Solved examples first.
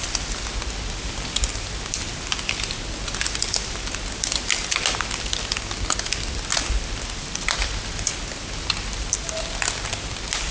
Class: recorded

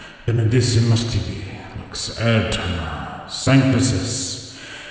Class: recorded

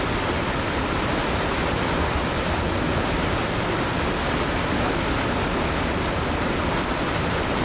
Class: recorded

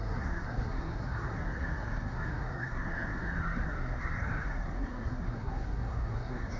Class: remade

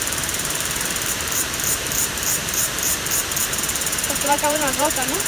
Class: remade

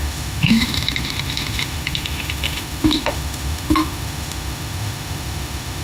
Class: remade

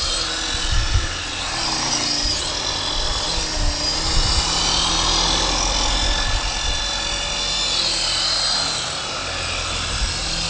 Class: recorded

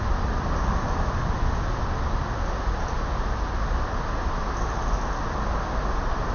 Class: recorded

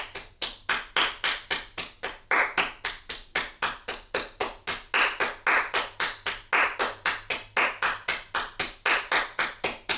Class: recorded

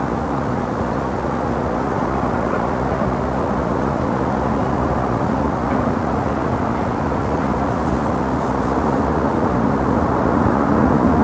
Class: remade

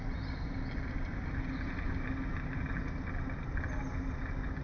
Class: recorded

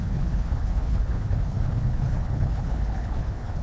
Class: remade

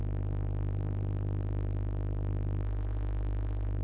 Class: remade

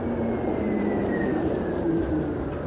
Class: remade